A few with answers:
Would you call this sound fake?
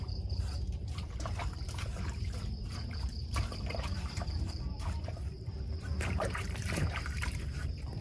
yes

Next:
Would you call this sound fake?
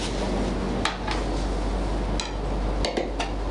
no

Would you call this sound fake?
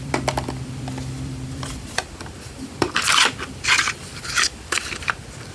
yes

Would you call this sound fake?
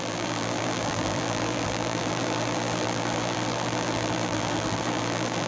yes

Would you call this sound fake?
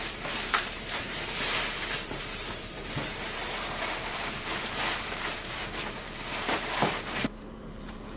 yes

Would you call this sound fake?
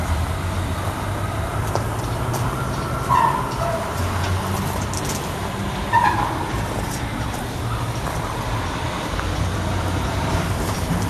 yes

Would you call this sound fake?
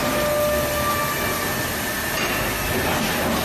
no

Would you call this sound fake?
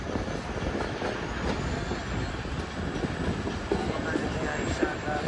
no